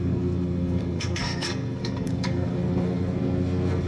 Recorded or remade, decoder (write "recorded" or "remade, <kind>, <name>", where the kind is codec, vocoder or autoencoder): remade, codec, SNAC